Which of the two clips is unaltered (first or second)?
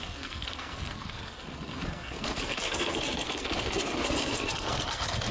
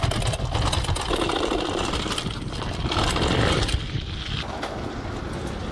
second